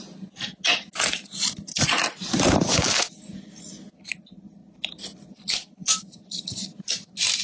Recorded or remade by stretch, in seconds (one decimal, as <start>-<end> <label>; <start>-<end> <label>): 0.0-7.4 recorded